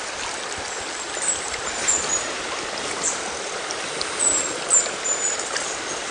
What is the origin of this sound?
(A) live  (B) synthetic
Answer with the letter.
A